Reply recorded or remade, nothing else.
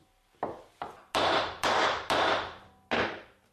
recorded